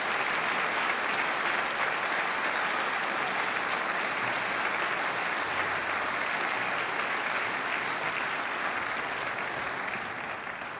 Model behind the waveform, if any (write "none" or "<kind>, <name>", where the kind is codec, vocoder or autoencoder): none